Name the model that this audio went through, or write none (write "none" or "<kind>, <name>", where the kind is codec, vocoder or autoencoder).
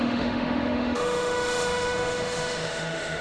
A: autoencoder, DAC-VAE